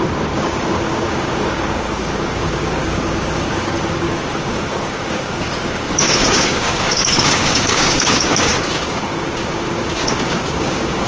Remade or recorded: remade